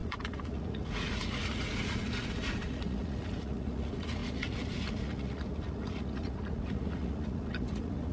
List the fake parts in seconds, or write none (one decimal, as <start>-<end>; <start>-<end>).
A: 0.0-8.1